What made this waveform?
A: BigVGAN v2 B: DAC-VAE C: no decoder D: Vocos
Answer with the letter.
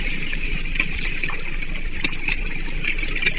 A